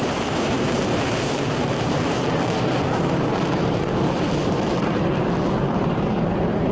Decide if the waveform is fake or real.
fake